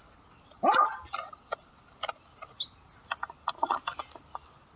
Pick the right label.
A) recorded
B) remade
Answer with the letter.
A